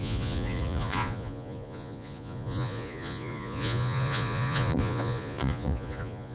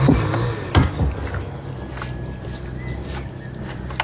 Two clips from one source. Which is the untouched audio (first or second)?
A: second